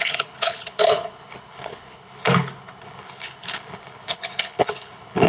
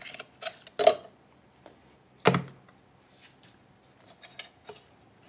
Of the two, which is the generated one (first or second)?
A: first